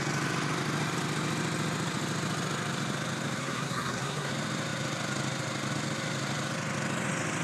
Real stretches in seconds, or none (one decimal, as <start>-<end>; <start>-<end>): 0.0-3.4; 4.3-7.4